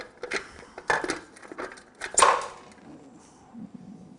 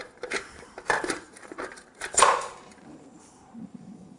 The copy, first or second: second